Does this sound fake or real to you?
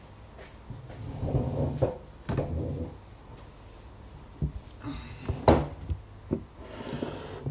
real